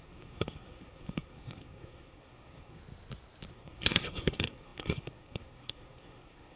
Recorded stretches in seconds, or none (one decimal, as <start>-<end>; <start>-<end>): 2.8-3.5